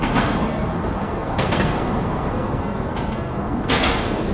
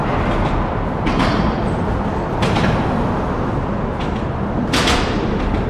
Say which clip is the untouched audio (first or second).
second